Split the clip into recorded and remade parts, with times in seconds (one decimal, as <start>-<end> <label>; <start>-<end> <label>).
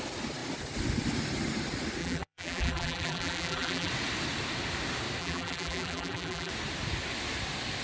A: 0.0-2.0 recorded; 2.0-3.9 remade; 3.9-5.2 recorded; 5.2-6.5 remade; 6.5-7.8 recorded